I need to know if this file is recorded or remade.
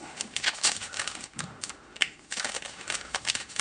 remade